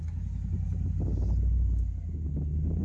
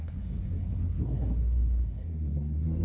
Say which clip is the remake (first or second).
second